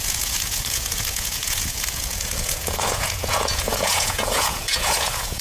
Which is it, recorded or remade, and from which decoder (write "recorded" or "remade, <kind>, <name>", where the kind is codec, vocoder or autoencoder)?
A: remade, vocoder, Vocos